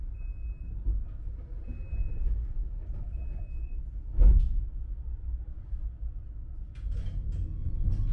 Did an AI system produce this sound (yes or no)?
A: no